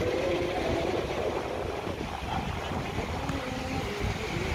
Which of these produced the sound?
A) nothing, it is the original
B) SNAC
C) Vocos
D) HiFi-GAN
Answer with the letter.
A